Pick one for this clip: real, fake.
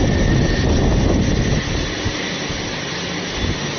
real